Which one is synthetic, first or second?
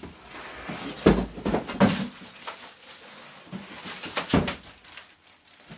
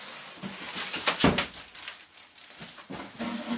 first